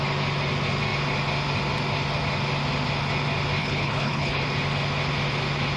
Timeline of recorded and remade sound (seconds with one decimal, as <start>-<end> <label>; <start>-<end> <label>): 0.0-3.6 recorded; 3.6-4.4 remade; 4.4-5.8 recorded